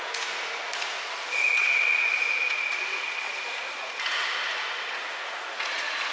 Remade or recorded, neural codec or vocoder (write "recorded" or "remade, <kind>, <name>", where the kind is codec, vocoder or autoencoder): remade, vocoder, Vocos